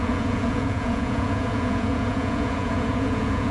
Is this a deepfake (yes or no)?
yes